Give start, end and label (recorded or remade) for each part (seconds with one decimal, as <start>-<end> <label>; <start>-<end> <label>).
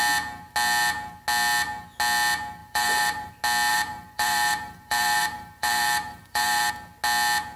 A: 0.0-2.6 recorded; 2.6-3.3 remade; 3.3-3.7 recorded; 3.7-6.7 remade; 6.7-7.6 recorded